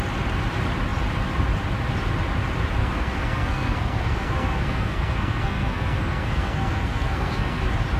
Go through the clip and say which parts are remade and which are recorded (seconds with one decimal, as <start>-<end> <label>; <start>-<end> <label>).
0.0-2.8 recorded; 2.8-7.6 remade; 7.6-8.0 recorded